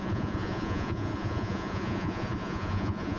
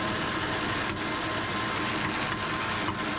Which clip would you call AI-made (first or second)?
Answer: first